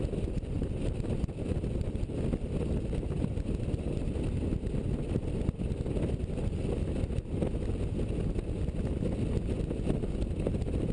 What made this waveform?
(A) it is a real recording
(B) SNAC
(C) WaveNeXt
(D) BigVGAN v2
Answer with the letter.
A